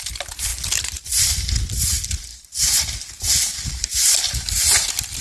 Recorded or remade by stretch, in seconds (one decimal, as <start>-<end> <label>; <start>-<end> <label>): 0.0-5.2 recorded